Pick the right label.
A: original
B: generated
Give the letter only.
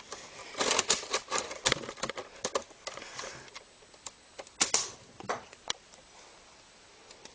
A